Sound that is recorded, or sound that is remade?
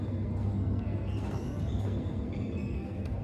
remade